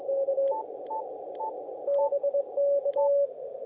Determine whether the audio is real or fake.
real